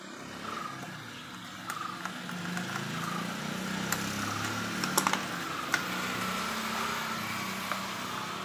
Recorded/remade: recorded